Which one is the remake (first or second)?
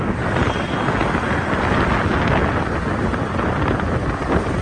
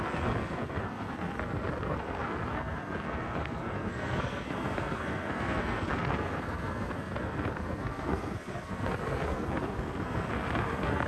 second